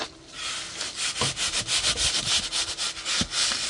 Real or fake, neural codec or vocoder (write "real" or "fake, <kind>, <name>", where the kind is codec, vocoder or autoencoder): real